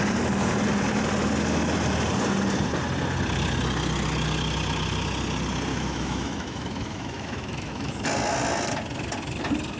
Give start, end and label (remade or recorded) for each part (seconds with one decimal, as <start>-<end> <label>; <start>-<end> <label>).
0.0-5.7 recorded; 5.7-7.9 remade; 7.9-9.8 recorded

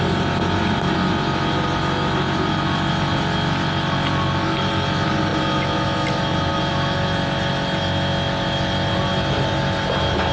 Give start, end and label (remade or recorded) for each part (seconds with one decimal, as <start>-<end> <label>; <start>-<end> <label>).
0.0-10.3 recorded

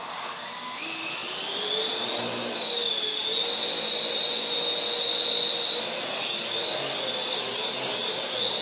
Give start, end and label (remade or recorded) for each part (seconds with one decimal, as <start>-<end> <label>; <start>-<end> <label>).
0.0-8.6 recorded

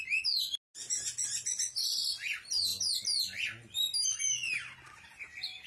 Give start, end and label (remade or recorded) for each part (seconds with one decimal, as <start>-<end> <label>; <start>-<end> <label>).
0.0-5.7 recorded

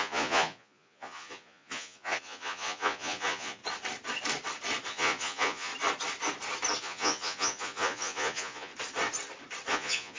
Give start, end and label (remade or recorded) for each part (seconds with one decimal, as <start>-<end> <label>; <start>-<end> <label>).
0.0-3.6 remade; 3.6-4.9 recorded; 4.9-5.7 remade; 5.7-6.8 recorded; 6.8-8.7 remade; 8.7-9.7 recorded; 9.7-10.2 remade

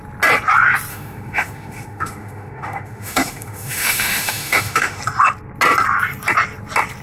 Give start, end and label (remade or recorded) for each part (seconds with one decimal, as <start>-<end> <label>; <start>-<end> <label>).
0.0-0.9 recorded; 0.9-5.0 remade; 5.0-7.0 recorded

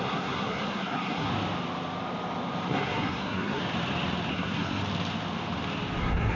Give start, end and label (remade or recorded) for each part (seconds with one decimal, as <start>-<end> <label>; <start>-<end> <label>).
0.0-1.3 remade; 1.3-2.7 recorded; 2.7-3.6 remade; 3.6-4.3 recorded; 4.3-4.8 remade; 4.8-6.0 recorded; 6.0-6.4 remade

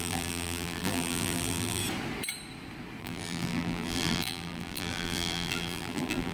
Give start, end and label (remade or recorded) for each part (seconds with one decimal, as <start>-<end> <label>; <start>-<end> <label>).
0.0-1.8 remade; 1.8-3.0 recorded; 3.0-6.3 remade